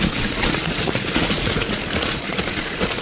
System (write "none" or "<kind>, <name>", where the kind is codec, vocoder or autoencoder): vocoder, Vocos